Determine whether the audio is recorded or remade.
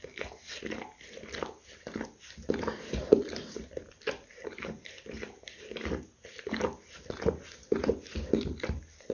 recorded